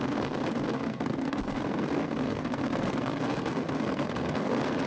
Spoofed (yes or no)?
yes